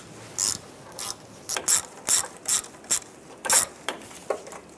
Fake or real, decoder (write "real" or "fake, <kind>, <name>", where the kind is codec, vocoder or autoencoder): real